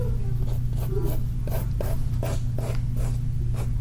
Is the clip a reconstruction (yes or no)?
no